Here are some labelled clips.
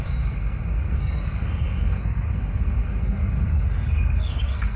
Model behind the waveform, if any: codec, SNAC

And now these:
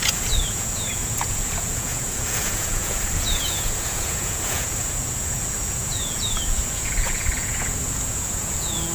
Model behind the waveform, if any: vocoder, Vocos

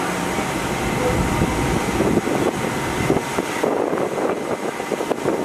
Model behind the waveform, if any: vocoder, BigVGAN v2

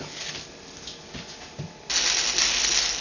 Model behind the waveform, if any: none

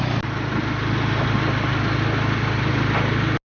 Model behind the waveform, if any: none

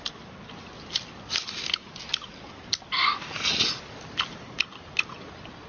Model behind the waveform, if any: none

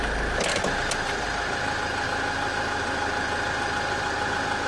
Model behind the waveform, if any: none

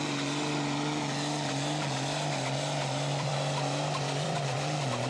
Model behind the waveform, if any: vocoder, BigVGAN v2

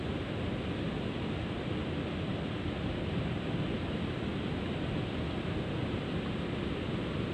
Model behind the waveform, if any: none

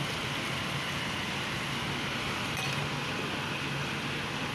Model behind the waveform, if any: none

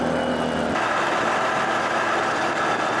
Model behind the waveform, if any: none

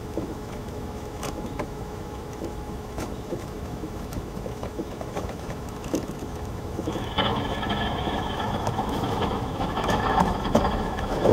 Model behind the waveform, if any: autoencoder, DAC-VAE